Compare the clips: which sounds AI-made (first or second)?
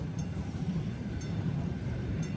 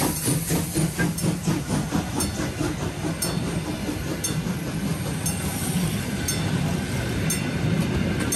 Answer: first